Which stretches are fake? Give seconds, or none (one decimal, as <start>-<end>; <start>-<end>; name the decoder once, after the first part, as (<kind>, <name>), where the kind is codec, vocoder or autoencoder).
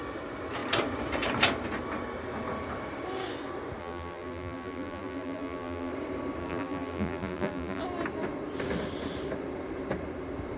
3.8-5.9 (vocoder, BigVGAN v2); 6.4-7.8